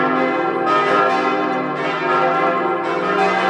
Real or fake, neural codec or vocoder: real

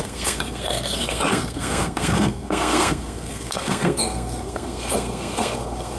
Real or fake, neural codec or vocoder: fake, codec, SNAC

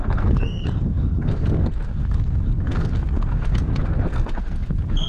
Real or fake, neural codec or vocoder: fake, codec, SNAC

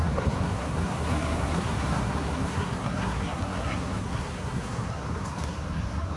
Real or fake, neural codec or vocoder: fake, codec, SNAC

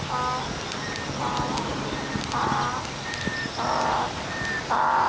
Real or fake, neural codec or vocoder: real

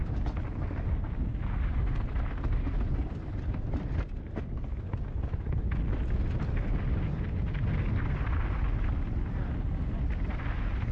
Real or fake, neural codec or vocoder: real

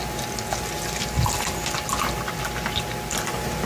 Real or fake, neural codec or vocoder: real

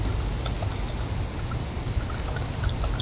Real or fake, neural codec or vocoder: real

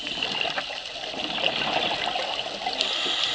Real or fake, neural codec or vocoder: real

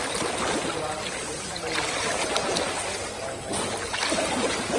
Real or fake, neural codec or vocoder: real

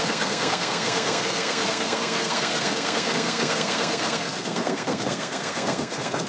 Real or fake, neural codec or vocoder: fake, codec, SNAC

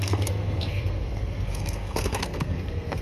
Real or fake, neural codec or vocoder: fake, codec, SNAC